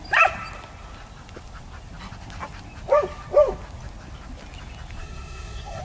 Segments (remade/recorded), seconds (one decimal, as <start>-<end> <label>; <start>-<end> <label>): 0.0-5.0 recorded; 5.0-5.8 remade